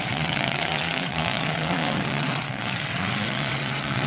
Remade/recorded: remade